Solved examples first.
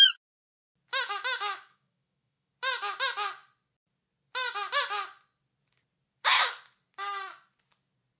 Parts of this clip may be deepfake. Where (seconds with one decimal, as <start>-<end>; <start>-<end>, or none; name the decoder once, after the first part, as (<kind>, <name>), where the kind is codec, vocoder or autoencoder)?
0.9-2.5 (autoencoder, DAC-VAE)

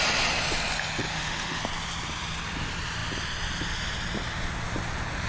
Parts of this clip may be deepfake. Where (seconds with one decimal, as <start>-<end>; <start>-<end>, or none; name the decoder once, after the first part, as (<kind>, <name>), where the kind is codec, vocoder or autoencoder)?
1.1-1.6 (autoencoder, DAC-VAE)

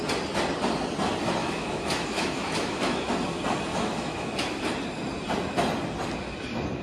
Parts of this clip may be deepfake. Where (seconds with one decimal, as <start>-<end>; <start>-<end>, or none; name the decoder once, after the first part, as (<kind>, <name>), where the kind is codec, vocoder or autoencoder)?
1.4-3.1 (autoencoder, DAC-VAE); 3.7-4.6

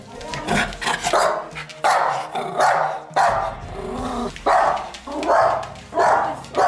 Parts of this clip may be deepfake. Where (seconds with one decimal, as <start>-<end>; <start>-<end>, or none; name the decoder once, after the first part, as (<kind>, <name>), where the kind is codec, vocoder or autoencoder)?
none

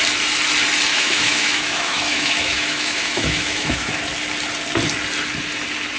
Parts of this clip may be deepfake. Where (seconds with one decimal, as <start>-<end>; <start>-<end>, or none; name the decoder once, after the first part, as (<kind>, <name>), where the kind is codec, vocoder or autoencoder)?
0.9-3.9 (autoencoder, DAC-VAE)

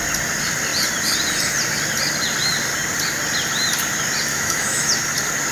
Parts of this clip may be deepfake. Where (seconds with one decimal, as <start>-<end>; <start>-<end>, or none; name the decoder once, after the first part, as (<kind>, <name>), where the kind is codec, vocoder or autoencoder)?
4.3-4.9 (autoencoder, DAC-VAE)

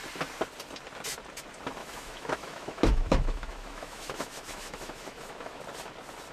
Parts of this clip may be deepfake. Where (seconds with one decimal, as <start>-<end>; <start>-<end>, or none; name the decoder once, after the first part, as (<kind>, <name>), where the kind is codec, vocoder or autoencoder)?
1.8-5.6 (autoencoder, DAC-VAE)